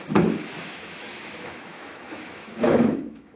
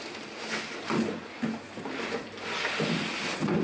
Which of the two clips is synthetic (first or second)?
first